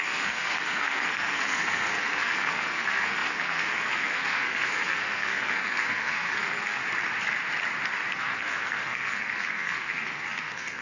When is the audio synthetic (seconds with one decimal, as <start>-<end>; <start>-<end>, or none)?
0.0-6.8; 8.1-10.8

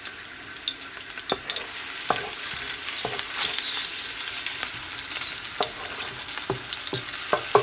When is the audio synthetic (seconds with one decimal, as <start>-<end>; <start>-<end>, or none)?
none

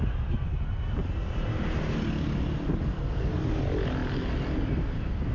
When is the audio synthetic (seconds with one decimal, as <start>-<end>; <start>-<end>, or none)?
2.8-3.3

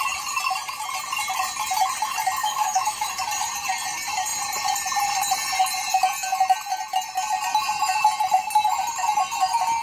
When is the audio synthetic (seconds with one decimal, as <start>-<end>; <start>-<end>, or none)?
2.4-3.1